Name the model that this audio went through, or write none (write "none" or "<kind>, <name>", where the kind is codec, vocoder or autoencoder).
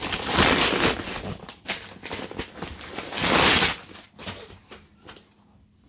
none